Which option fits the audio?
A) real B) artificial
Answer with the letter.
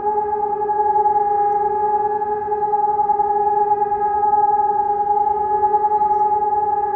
A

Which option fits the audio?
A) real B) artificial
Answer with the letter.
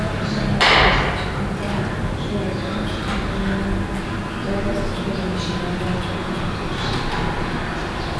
A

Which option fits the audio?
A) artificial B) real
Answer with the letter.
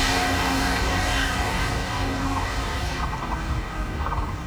A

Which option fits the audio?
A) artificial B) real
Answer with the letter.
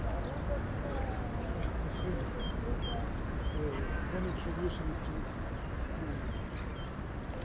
B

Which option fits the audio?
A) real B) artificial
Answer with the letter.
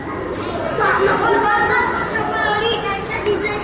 A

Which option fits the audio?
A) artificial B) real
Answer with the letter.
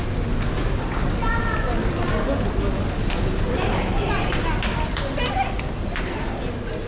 B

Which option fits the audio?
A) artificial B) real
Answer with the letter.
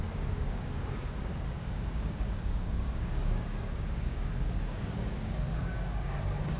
A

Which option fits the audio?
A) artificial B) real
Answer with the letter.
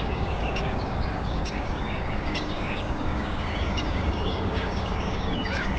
A